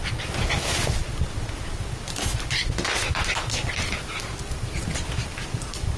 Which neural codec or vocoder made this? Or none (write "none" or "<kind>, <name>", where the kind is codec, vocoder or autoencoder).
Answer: none